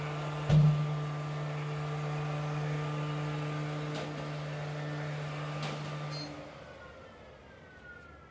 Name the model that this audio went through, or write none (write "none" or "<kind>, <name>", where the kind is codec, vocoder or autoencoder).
none